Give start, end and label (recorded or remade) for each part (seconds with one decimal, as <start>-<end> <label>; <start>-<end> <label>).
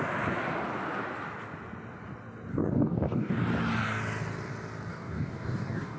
0.0-2.5 recorded; 2.5-3.3 remade; 3.3-4.9 recorded; 4.9-6.0 remade